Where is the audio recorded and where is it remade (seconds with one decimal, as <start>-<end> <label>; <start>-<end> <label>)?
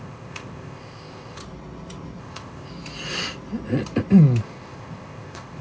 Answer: 0.0-1.4 remade; 1.4-2.2 recorded; 2.2-2.7 remade; 2.7-4.4 recorded; 4.4-5.6 remade